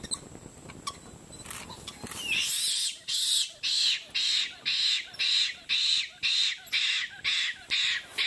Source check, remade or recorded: recorded